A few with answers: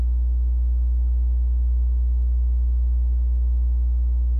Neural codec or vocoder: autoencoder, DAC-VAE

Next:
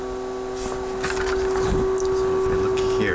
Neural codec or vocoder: none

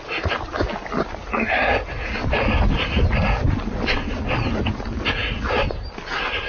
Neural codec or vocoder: none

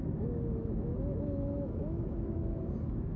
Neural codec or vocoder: autoencoder, DAC-VAE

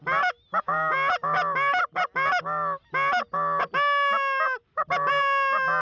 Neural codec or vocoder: none